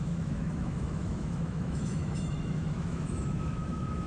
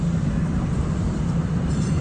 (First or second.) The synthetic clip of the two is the first